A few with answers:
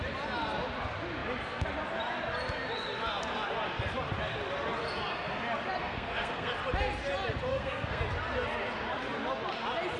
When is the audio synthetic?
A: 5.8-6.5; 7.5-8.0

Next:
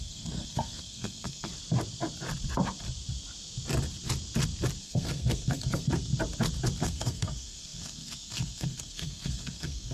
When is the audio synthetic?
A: 0.0-1.5; 4.8-6.1; 6.8-9.9

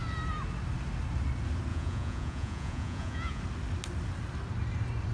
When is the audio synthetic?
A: 1.7-3.4